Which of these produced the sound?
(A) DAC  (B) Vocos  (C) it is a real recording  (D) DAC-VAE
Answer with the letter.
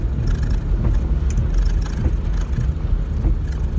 C